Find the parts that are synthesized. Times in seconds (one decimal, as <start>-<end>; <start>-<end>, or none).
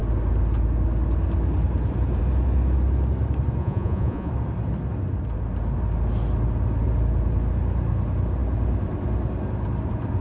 3.6-4.3